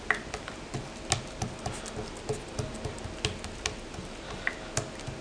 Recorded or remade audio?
recorded